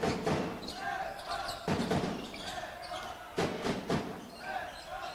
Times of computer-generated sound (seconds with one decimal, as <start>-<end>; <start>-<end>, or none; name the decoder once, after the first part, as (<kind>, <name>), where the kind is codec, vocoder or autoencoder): none